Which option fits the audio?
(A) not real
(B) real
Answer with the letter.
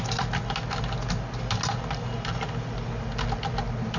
B